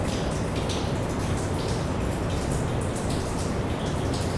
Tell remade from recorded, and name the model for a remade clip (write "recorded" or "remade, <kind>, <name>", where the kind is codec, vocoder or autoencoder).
recorded